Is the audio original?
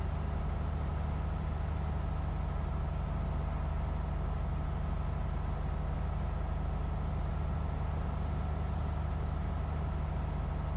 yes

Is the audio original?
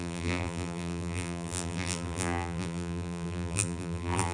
no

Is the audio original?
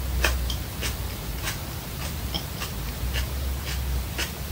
no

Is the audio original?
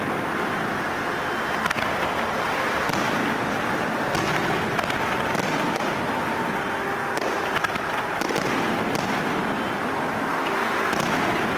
yes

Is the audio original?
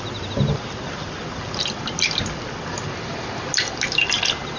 yes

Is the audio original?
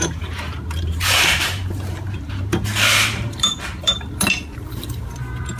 no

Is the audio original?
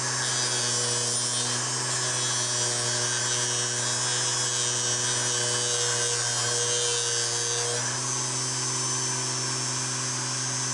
yes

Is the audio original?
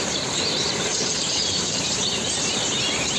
no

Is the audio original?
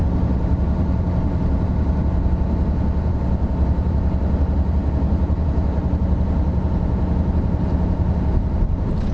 yes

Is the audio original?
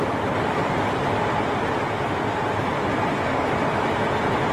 no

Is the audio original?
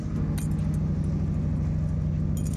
yes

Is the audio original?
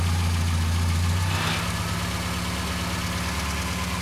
yes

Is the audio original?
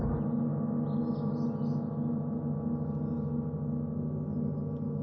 yes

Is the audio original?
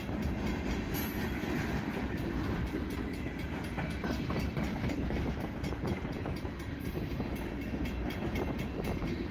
no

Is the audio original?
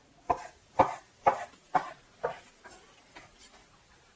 yes